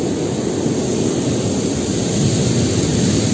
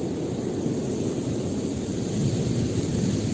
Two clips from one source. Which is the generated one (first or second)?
second